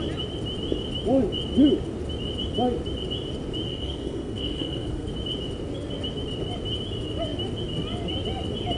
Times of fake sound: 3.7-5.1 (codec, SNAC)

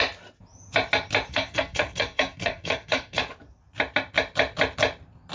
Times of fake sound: 1.3-3.2 (codec, SNAC)

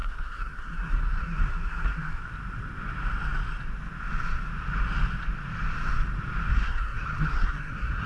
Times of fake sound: 0.0-2.2 (codec, SNAC); 6.5-8.1

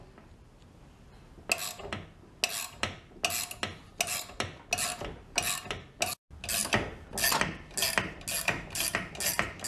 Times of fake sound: none

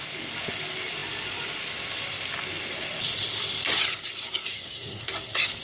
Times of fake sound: 4.5-5.1 (codec, SNAC)

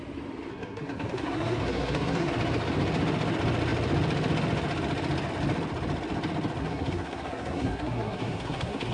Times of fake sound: 0.5-2.3 (codec, SNAC); 6.6-8.9

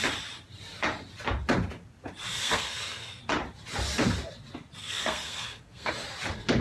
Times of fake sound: 2.3-3.2 (codec, SNAC); 4.8-5.9